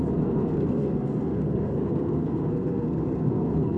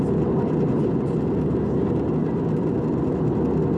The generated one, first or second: first